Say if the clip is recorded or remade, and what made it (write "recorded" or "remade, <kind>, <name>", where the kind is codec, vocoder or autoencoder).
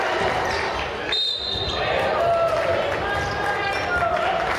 recorded